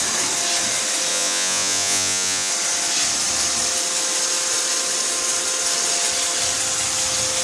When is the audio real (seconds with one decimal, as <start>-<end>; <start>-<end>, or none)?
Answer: 0.0-1.1; 2.5-7.4